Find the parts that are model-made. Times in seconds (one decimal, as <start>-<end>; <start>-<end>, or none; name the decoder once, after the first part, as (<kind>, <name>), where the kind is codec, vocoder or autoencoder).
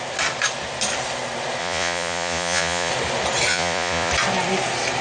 1.6-2.9 (vocoder, Vocos); 3.5-4.1